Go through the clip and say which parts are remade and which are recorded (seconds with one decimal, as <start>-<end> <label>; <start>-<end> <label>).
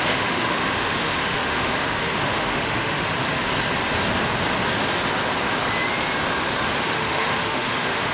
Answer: 0.0-3.4 remade; 3.4-6.8 recorded; 6.8-8.1 remade